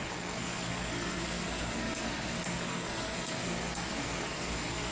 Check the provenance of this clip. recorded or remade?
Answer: remade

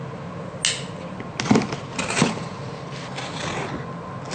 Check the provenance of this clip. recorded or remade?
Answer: recorded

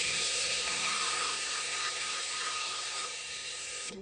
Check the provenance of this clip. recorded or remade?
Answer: remade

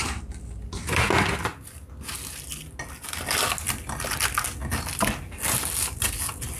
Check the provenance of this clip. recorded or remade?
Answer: recorded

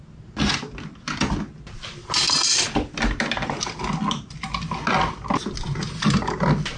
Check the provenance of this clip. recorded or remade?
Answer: recorded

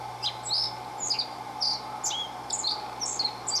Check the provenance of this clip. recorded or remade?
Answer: recorded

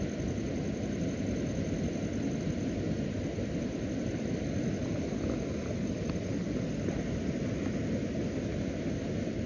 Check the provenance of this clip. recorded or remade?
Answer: recorded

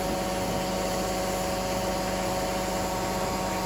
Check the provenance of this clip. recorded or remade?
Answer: recorded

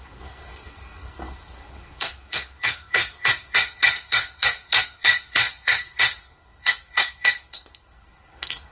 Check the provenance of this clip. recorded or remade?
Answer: remade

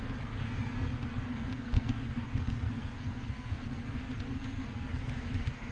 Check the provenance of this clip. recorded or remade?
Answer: remade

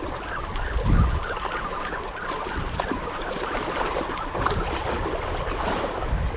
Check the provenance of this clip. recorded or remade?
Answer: recorded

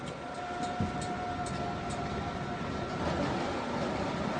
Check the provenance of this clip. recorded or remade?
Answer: recorded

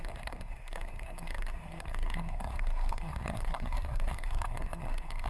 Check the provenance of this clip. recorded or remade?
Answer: remade